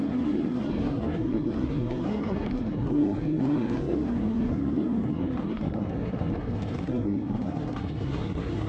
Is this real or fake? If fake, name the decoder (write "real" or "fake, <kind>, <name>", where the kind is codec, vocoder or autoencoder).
fake, codec, SNAC